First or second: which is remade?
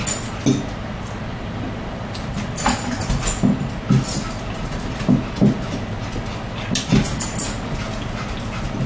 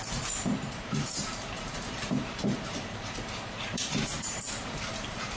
second